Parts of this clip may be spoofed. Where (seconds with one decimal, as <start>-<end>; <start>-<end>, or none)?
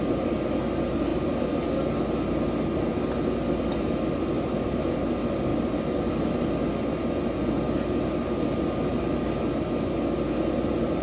none